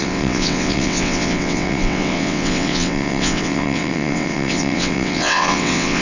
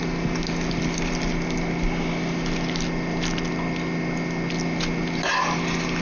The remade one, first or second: first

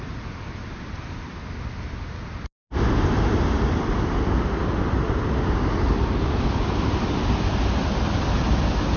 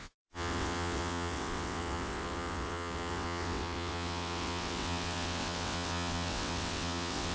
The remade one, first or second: second